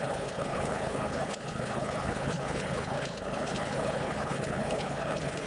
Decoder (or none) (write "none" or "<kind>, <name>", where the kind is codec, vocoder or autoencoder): codec, HILCodec